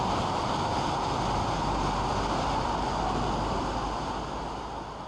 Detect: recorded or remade recorded